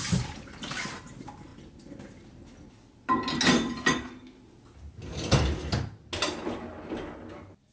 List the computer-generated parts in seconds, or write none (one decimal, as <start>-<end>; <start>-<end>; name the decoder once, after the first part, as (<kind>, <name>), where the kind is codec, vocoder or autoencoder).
none